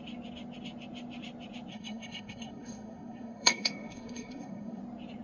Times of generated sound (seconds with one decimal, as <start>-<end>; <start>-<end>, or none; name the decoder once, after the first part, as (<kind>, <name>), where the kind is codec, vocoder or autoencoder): 1.7-4.8 (codec, SNAC)